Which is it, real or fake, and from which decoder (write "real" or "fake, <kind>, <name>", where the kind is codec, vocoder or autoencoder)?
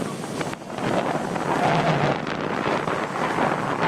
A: real